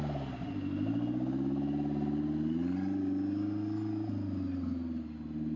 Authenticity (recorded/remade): recorded